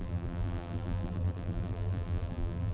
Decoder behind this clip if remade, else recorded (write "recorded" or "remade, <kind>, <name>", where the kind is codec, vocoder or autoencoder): remade, vocoder, BigVGAN v2